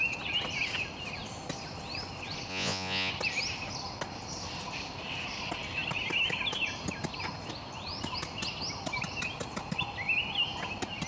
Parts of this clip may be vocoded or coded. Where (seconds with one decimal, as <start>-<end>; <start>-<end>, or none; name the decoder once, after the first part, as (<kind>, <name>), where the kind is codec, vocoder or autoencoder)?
2.5-3.1 (vocoder, Vocos)